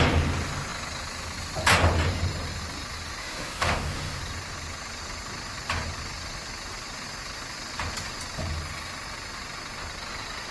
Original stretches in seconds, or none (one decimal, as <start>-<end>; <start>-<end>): 0.0-3.2; 4.2-10.5